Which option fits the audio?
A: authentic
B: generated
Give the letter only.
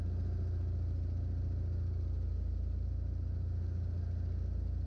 A